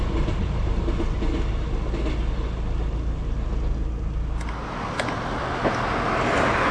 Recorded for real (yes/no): yes